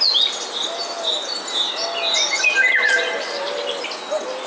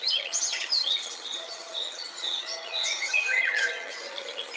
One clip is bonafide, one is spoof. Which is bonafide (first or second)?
first